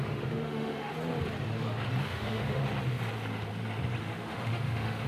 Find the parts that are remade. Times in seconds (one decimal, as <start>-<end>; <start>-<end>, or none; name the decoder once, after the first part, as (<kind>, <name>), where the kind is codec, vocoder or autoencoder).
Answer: 0.0-0.9 (autoencoder, DAC-VAE); 2.0-2.6; 4.0-5.1

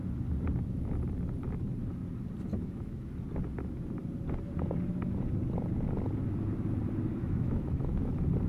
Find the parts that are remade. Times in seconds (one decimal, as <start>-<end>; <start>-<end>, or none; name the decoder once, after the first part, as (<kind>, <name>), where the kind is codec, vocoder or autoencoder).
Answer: 2.5-3.1 (autoencoder, DAC-VAE); 7.1-8.1

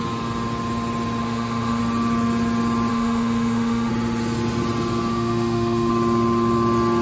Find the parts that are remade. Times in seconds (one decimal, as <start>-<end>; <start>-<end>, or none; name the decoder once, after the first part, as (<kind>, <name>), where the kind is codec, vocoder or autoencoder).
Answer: 1.2-1.8 (autoencoder, DAC-VAE); 2.9-3.9; 5.1-5.9

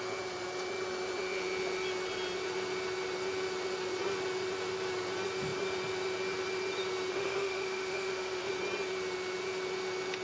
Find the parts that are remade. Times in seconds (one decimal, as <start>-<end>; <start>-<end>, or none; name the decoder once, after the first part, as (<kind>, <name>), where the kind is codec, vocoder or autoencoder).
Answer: 7.1-8.5 (autoencoder, DAC-VAE)